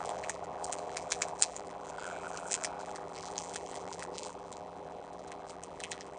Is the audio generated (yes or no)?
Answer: yes